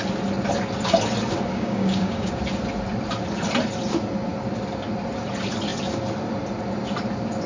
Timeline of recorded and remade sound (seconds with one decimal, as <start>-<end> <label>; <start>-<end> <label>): 0.0-1.5 recorded; 1.5-2.3 remade; 2.3-7.5 recorded